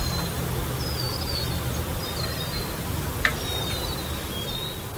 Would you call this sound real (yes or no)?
yes